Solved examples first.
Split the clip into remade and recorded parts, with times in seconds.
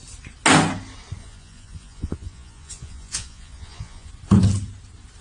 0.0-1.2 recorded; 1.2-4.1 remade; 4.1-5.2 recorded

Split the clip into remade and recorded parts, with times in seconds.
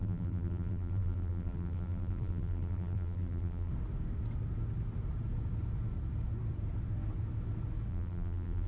0.0-3.7 remade; 3.7-7.9 recorded; 7.9-8.7 remade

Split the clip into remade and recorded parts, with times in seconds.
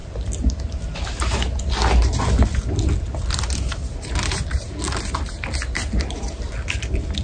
0.0-7.2 recorded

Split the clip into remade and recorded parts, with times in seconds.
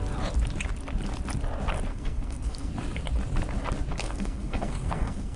0.0-1.9 recorded; 1.9-2.7 remade; 2.7-4.0 recorded; 4.0-5.4 remade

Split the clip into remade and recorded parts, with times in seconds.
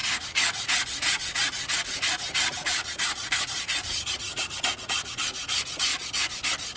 0.0-5.9 remade; 5.9-6.8 recorded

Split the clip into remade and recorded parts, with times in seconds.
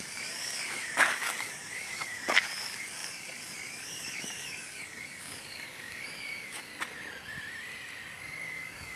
0.0-6.7 remade; 6.7-8.5 recorded; 8.5-9.0 remade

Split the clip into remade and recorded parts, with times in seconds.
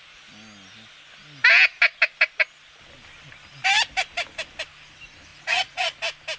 0.0-5.3 recorded; 5.3-6.0 remade; 6.0-6.4 recorded